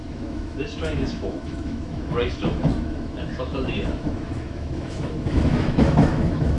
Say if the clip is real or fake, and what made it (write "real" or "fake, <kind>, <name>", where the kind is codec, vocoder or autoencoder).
fake, autoencoder, DAC-VAE